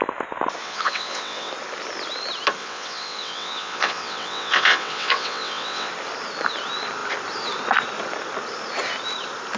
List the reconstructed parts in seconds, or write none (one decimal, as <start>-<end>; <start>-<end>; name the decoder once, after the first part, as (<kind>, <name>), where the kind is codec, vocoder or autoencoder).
0.6-1.5 (vocoder, WaveNeXt); 2.6-5.9